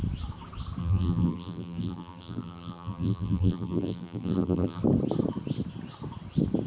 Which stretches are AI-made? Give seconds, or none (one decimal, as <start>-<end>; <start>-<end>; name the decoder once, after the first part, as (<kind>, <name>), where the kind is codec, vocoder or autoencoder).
0.8-4.8 (vocoder, BigVGAN v2)